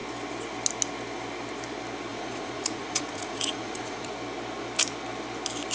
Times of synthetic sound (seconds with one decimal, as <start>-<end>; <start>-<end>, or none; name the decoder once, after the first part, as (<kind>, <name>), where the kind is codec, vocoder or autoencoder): 2.1-4.1 (vocoder, Vocos)

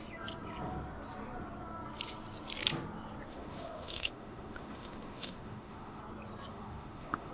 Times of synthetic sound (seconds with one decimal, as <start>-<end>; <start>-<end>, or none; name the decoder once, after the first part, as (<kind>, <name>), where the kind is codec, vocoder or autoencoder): 3.3-6.0 (autoencoder, DAC-VAE); 6.5-7.3

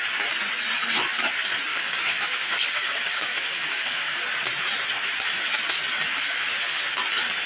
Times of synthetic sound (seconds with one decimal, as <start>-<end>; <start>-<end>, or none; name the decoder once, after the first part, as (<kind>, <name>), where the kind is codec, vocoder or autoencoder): 1.7-4.2 (codec, DAC); 6.1-6.8

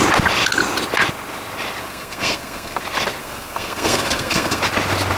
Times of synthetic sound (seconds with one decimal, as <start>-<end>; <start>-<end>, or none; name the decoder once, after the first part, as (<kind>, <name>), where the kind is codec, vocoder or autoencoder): 1.8-2.8 (codec, SNAC); 3.2-4.6

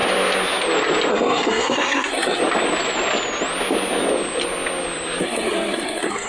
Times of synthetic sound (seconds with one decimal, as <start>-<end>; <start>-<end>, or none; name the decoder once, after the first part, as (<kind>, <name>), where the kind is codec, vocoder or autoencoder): 1.1-2.4 (codec, SNAC); 5.2-6.3

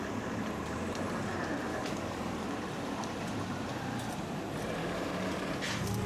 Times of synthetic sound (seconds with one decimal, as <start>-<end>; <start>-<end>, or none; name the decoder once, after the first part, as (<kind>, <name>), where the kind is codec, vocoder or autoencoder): 1.7-2.3 (codec, DAC); 4.8-5.5

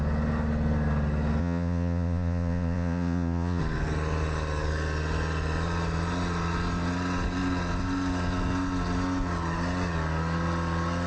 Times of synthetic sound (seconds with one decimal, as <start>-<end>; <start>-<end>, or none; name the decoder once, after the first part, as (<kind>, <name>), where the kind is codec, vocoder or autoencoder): 1.4-3.6 (vocoder, Vocos)